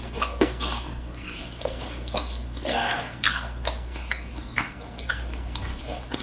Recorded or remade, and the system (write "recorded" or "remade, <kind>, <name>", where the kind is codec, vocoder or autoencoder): remade, codec, SNAC